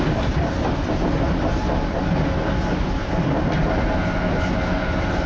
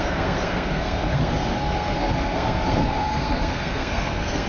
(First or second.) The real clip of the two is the first